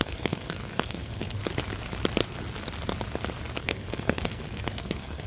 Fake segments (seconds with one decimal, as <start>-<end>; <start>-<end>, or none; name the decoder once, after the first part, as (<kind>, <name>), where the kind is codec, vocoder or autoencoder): 0.0-1.4 (codec, SNAC); 3.6-5.3